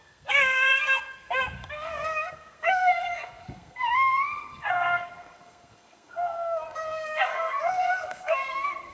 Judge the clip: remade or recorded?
remade